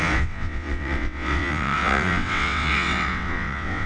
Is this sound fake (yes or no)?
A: yes